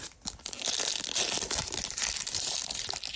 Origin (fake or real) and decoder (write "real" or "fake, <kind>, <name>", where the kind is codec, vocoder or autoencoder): real